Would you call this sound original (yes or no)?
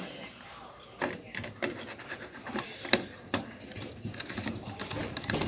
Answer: no